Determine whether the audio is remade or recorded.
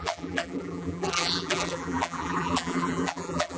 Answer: remade